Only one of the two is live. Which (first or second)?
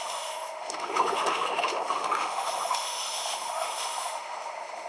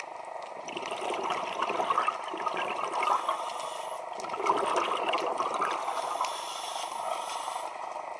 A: second